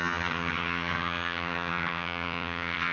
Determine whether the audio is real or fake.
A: fake